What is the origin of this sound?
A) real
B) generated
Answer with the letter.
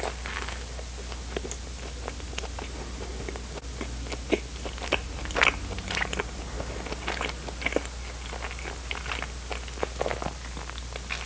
A